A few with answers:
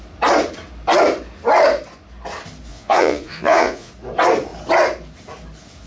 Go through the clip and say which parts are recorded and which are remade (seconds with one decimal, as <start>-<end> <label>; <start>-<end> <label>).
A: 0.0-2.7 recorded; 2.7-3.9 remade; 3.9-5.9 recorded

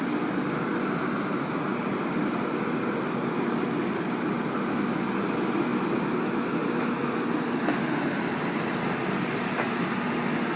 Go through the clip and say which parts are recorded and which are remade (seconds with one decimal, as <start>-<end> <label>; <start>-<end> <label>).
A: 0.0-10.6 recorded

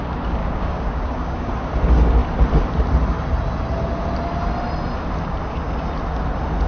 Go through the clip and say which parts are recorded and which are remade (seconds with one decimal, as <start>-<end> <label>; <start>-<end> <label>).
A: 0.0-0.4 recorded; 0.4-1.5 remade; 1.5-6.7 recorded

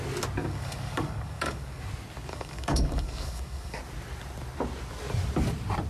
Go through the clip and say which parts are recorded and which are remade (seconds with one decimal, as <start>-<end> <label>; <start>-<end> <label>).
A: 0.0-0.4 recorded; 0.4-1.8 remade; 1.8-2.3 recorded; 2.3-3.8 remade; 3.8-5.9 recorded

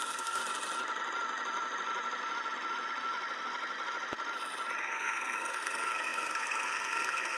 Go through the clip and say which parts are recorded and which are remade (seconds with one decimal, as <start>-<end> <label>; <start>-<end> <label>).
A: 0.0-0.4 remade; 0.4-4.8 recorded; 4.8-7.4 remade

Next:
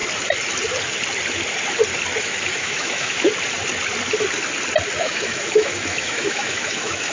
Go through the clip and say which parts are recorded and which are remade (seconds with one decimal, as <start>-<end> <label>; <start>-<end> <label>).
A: 0.0-2.2 recorded; 2.2-3.3 remade; 3.3-5.0 recorded; 5.0-7.1 remade